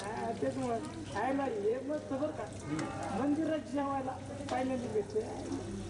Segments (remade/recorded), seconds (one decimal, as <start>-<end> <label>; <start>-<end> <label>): 0.0-1.7 recorded; 1.7-2.8 remade; 2.8-3.7 recorded; 3.7-4.3 remade; 4.3-5.9 recorded